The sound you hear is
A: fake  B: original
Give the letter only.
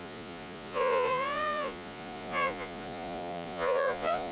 A